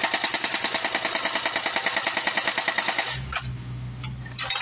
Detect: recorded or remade recorded